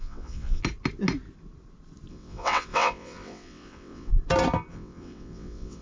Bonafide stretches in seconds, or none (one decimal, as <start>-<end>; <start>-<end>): 0.6-2.1; 4.1-4.7